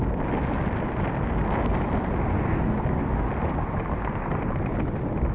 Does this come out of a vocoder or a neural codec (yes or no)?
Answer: no